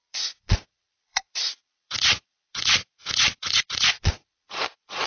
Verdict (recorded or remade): remade